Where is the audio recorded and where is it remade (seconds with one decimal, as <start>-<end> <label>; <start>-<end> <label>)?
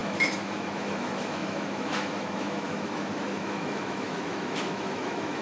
0.0-5.4 remade